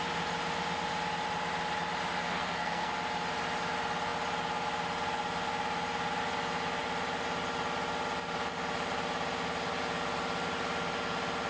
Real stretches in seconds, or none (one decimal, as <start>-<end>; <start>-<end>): 0.0-2.2; 2.9-11.5